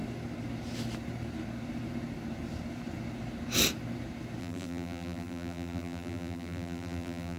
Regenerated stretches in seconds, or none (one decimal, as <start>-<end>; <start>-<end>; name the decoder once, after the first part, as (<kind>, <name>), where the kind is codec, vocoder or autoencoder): 4.4-7.4 (vocoder, BigVGAN v2)